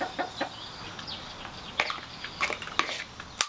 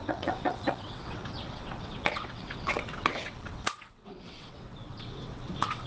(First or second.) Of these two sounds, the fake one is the second